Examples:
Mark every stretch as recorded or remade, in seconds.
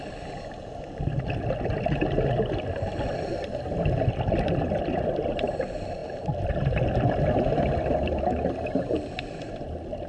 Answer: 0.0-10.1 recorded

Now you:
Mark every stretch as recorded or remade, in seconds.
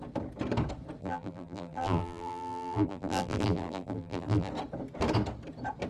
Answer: 0.0-1.0 recorded; 1.0-4.5 remade; 4.5-5.9 recorded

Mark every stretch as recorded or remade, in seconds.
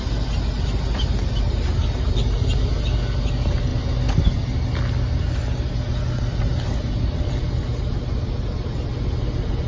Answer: 0.0-1.2 recorded; 1.2-2.5 remade; 2.5-9.7 recorded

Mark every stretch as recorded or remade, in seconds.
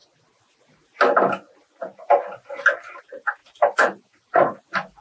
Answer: 0.0-3.0 recorded; 3.0-5.0 remade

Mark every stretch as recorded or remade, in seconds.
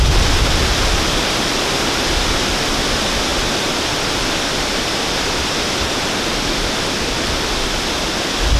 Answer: 0.0-8.6 recorded